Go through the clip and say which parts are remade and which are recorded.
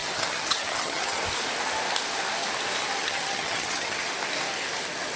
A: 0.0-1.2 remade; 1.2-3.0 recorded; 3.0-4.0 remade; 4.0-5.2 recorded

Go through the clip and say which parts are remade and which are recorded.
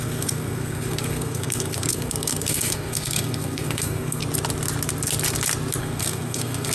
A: 0.0-4.2 remade; 4.2-5.8 recorded; 5.8-6.7 remade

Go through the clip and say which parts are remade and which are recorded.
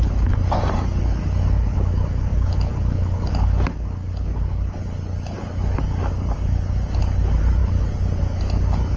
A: 0.0-9.0 recorded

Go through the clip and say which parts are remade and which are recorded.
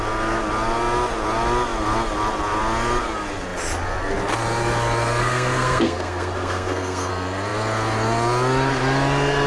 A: 0.0-5.2 recorded; 5.2-7.1 remade; 7.1-9.5 recorded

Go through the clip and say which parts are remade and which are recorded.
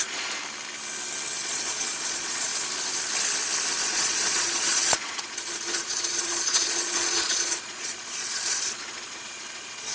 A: 0.0-0.4 remade; 0.4-1.4 recorded; 1.4-2.5 remade; 2.5-3.8 recorded; 3.8-9.9 remade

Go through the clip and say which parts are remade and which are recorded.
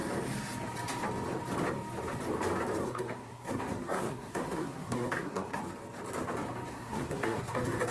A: 0.0-2.8 recorded; 2.8-5.6 remade; 5.6-6.7 recorded; 6.7-7.9 remade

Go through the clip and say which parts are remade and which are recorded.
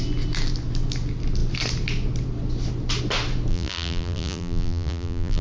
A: 0.0-3.5 recorded; 3.5-5.4 remade